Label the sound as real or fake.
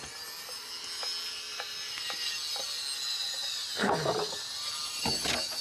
real